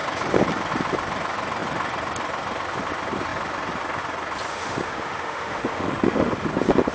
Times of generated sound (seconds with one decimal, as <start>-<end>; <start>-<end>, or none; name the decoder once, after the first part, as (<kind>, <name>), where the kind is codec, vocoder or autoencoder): 4.5-6.3 (autoencoder, DAC-VAE)